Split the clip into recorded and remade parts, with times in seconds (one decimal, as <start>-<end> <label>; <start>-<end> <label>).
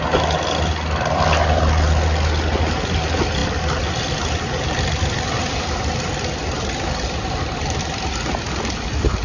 0.0-9.2 recorded